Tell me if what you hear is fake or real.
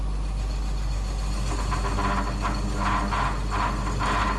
real